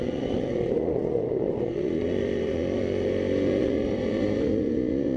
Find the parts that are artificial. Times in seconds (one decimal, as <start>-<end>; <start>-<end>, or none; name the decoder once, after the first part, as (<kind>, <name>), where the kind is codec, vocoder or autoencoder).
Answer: 0.0-5.2 (vocoder, Vocos)